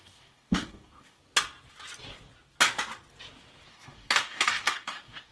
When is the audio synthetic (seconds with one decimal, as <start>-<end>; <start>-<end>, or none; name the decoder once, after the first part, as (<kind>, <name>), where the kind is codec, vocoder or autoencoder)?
0.0-1.2 (codec, DAC); 3.7-5.3